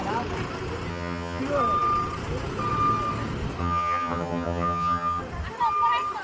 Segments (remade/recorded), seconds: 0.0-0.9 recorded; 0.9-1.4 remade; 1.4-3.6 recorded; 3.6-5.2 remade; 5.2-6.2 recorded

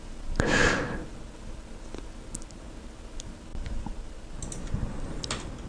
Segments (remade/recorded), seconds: 0.0-5.7 recorded